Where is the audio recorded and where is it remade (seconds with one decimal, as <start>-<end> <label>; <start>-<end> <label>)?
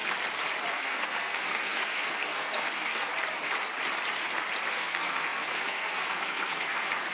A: 0.0-0.7 recorded; 0.7-3.1 remade; 3.1-4.7 recorded; 4.7-7.1 remade